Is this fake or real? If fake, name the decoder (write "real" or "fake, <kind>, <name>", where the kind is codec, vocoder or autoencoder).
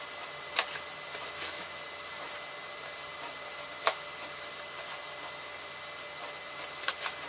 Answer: real